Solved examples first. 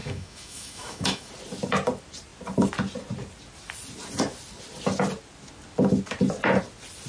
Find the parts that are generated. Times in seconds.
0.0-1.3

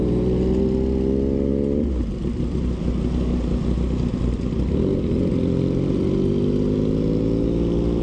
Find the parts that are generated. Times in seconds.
none